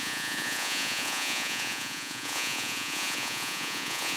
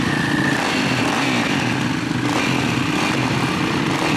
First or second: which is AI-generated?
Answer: first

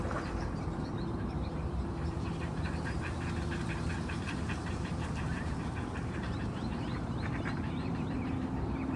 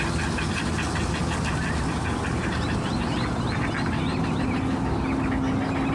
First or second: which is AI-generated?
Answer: first